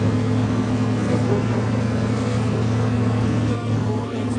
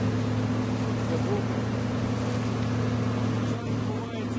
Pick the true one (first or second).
second